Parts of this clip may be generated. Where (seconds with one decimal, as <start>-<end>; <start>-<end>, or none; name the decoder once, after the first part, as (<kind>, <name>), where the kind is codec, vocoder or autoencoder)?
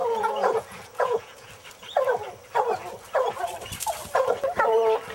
0.0-1.5 (vocoder, Vocos)